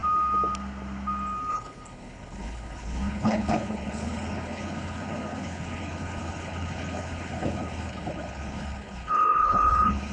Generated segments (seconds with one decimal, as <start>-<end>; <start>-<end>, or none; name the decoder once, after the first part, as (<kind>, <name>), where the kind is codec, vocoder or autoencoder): 1.5-10.1 (codec, HILCodec)